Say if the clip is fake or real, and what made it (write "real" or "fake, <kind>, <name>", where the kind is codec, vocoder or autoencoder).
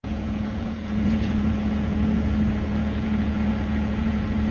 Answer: fake, vocoder, Vocos